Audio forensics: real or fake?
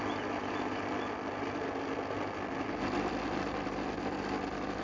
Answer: real